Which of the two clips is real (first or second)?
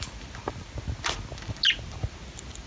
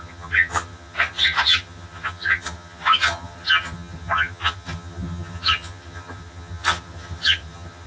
first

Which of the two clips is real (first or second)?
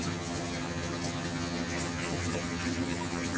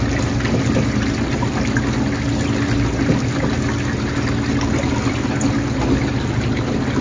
second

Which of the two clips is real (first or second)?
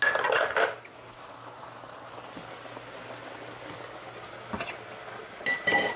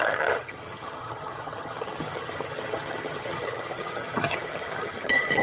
first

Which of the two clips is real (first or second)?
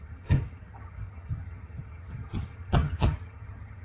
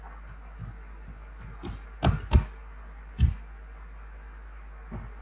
second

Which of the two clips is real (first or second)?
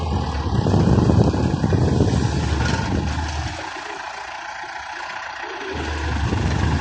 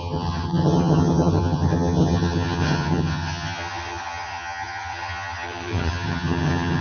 first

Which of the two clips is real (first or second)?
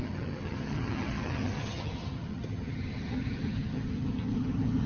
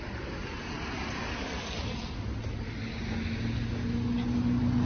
second